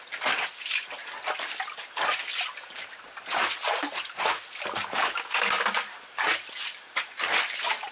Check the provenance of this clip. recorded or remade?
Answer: recorded